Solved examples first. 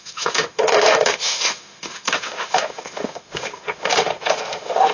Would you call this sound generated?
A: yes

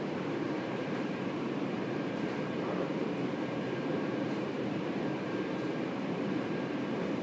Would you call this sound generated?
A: yes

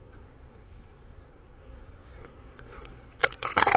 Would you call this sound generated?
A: yes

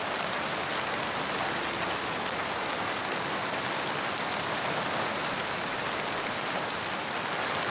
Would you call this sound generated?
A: no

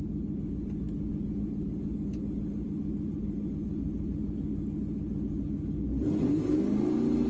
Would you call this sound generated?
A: no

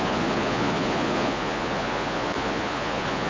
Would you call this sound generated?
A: yes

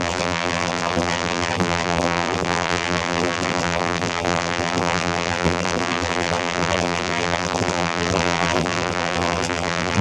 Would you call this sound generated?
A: yes